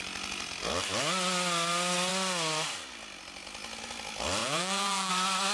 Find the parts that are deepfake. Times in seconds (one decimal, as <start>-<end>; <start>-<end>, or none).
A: 4.4-5.1